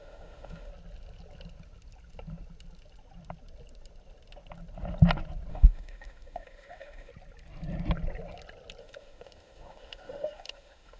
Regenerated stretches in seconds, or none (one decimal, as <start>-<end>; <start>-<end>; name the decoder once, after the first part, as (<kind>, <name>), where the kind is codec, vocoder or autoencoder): 0.0-0.7 (autoencoder, DAC-VAE); 5.5-7.1; 8.8-11.0